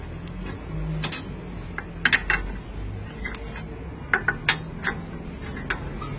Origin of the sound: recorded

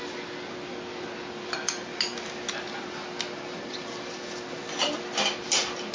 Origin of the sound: recorded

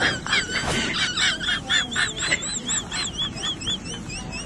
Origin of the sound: recorded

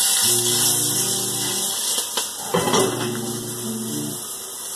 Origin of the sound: recorded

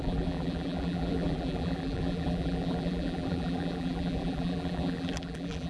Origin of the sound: remade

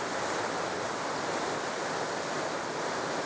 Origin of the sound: recorded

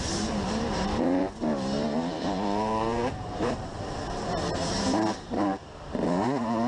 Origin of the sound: remade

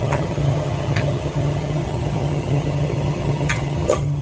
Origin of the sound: remade